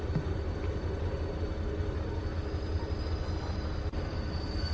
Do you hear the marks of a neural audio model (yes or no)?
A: no